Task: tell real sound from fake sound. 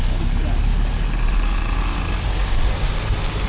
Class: real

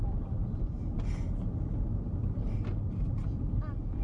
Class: real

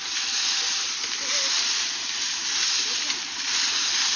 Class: real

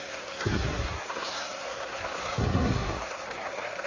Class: fake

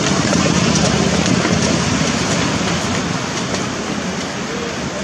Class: real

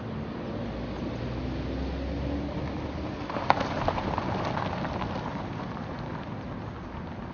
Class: real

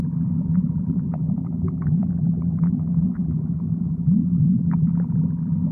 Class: fake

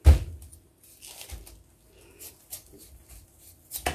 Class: real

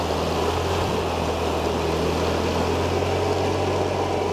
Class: real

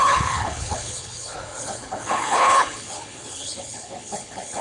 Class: fake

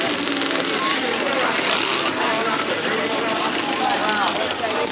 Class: real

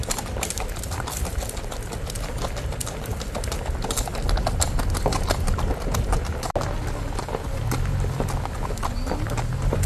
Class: real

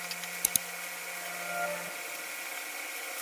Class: real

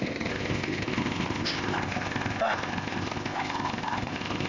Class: fake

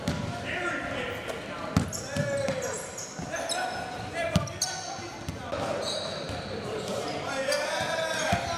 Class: real